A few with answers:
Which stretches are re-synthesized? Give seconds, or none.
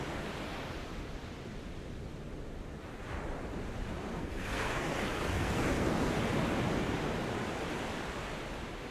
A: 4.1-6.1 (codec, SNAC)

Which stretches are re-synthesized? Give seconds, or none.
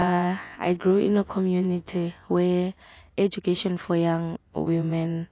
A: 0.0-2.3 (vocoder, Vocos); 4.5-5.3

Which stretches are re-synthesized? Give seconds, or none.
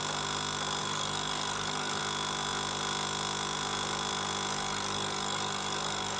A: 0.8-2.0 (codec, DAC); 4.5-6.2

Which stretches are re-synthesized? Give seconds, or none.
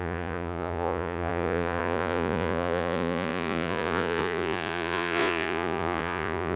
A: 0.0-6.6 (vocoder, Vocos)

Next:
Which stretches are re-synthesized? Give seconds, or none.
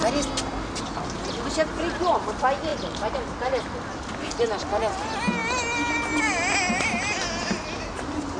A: none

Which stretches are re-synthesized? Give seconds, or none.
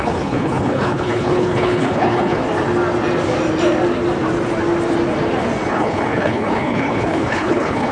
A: 0.0-2.4 (codec, HILCodec); 5.7-7.9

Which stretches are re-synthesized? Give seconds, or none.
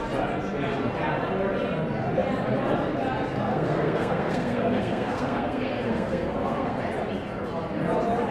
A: 3.5-6.8 (codec, SNAC)